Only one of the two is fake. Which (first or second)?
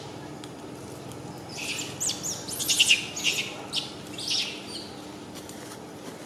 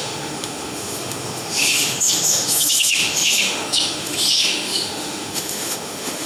second